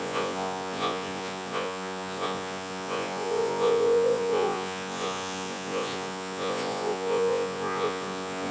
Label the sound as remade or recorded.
remade